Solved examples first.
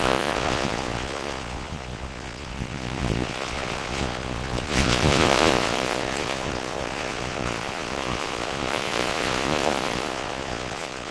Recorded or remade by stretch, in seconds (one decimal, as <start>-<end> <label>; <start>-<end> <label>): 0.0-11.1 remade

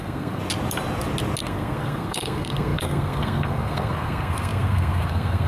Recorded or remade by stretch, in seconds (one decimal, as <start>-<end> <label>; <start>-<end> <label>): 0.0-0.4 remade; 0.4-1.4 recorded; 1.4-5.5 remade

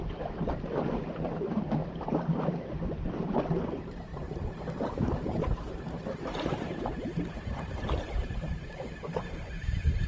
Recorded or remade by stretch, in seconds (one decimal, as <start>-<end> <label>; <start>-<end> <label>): 0.0-1.8 remade; 1.8-3.1 recorded; 3.1-4.1 remade; 4.1-4.8 recorded; 4.8-10.1 remade